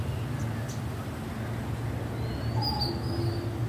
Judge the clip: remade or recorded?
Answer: recorded